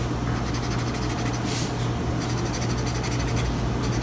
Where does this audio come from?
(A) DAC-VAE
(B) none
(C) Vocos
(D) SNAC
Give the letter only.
B